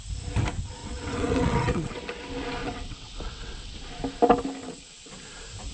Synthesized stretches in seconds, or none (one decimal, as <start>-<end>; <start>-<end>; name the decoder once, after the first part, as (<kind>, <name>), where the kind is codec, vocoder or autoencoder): 0.8-2.0 (vocoder, WaveNeXt); 2.6-3.7; 4.6-5.1